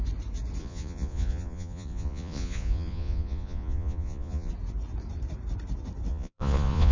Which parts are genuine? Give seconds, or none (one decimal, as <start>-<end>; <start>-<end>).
0.0-0.6; 4.5-6.1